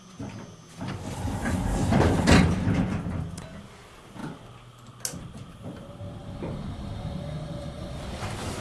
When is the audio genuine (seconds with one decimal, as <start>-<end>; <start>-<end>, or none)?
0.0-8.6